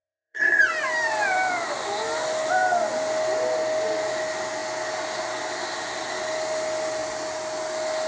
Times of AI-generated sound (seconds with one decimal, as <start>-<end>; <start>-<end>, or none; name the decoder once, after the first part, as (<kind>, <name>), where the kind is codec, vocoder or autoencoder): 0.0-0.6 (codec, SNAC)